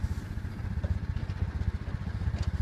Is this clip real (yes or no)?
yes